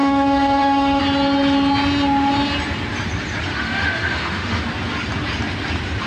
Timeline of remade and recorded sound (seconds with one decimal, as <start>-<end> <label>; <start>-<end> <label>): 0.0-1.0 remade; 1.0-3.5 recorded; 3.5-4.6 remade; 4.6-6.1 recorded